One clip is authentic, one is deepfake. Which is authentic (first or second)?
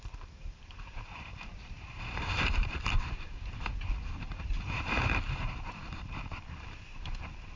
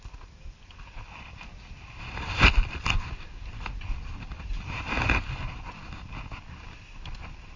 second